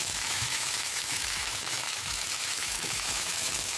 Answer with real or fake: fake